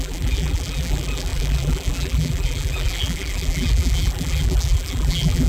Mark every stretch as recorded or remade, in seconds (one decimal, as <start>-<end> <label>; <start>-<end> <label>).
0.0-5.5 remade